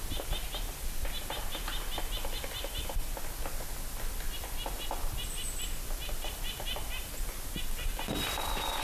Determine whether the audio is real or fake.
real